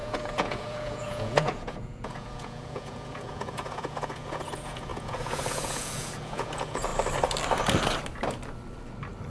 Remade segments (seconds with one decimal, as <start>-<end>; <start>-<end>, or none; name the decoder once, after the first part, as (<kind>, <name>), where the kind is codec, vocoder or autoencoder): 0.0-6.9 (vocoder, Vocos)